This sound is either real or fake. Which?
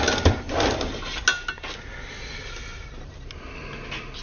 real